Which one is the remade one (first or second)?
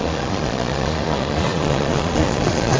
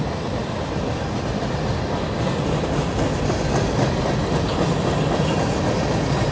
first